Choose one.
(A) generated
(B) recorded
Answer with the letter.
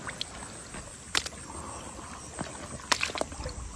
B